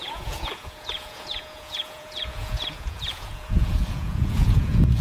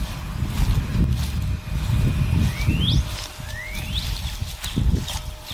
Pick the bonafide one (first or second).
second